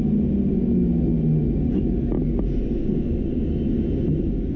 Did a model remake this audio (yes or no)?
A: no